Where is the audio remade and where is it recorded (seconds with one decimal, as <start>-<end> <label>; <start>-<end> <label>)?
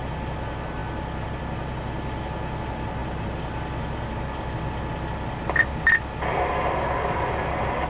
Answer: 0.0-7.9 recorded